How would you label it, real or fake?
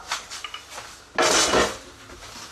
real